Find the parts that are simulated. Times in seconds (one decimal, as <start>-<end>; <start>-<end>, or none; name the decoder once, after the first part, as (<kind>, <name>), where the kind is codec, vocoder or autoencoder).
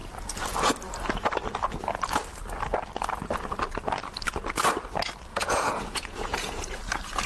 5.3-6.8 (vocoder, Vocos)